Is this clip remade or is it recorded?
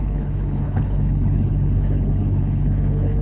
remade